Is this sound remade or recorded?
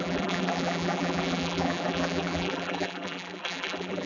remade